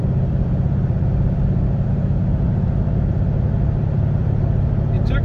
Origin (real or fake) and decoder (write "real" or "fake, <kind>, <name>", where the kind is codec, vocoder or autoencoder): fake, vocoder, BigVGAN v2